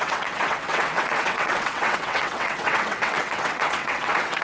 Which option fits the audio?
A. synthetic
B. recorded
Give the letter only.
A